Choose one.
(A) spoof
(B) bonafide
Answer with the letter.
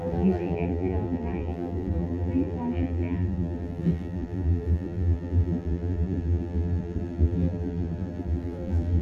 A